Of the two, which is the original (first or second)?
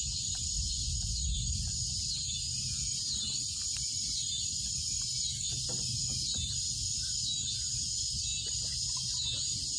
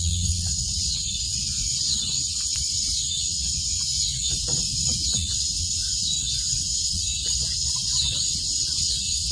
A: first